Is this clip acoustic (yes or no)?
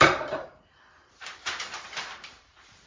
no